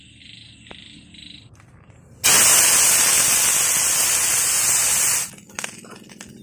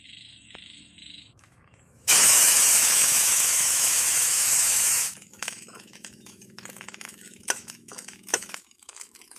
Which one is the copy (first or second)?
second